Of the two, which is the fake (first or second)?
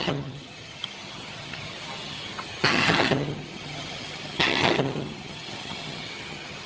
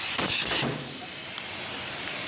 first